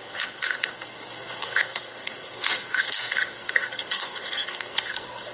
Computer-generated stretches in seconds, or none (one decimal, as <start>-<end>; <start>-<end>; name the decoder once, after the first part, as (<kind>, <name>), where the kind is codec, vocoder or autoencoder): 0.0-5.3 (codec, SNAC)